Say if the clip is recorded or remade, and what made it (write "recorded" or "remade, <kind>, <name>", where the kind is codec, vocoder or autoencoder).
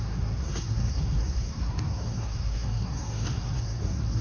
remade, codec, SNAC